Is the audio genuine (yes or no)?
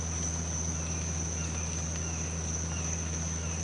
yes